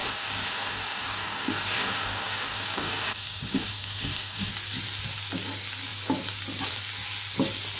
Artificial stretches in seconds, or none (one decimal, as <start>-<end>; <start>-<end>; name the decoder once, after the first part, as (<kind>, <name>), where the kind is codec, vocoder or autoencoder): 0.0-4.5 (codec, DAC)